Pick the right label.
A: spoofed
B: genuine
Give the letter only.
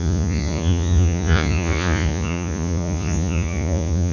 A